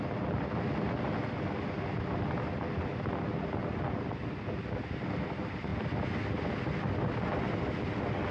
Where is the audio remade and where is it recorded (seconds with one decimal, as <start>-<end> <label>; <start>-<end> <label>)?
0.0-8.3 recorded